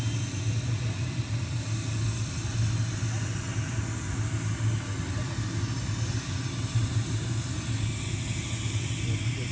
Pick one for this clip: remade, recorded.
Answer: recorded